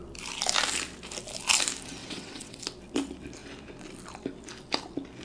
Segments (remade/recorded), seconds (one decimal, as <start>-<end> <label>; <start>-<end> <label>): 0.0-2.0 recorded; 2.0-2.6 remade; 2.6-5.2 recorded